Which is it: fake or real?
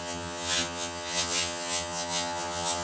fake